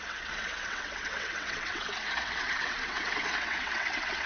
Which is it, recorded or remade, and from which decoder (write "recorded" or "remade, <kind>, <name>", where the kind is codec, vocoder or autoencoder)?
remade, vocoder, WaveNeXt